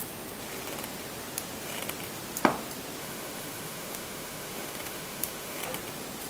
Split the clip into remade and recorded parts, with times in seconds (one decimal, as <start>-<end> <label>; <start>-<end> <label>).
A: 0.0-3.0 recorded; 3.0-5.6 remade; 5.6-6.3 recorded